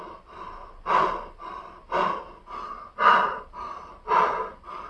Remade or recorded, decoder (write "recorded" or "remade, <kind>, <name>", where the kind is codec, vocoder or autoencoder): recorded